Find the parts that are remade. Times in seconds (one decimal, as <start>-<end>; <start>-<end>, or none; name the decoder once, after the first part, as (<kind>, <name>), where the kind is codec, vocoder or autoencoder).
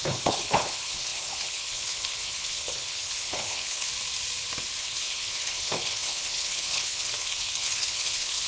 0.0-3.9 (codec, HILCodec); 4.8-8.5